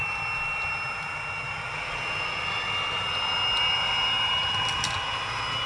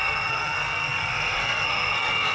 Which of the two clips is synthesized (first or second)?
second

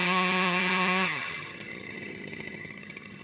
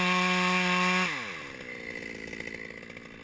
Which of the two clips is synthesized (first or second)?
first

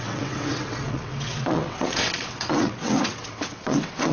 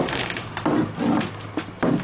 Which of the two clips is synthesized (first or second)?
first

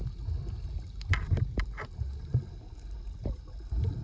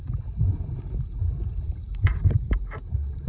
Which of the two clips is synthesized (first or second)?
second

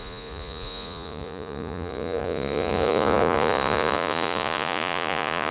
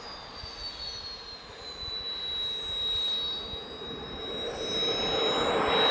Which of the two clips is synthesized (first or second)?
first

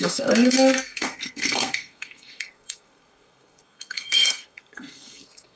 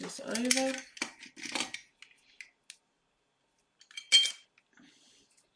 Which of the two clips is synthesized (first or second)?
first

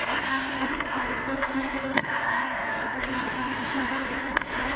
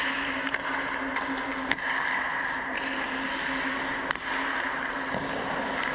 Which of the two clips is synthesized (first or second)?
first